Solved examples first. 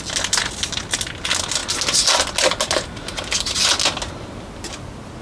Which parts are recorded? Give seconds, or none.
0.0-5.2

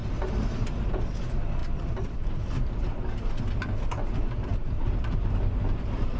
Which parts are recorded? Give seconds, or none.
0.0-1.6; 2.5-4.5

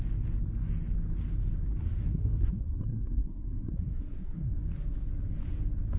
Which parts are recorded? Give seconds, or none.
0.0-2.0; 4.5-6.0

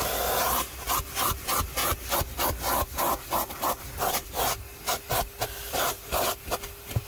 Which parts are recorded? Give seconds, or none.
0.0-7.1

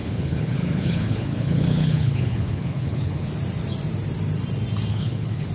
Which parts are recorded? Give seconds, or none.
3.3-4.9